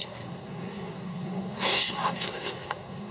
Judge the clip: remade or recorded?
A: remade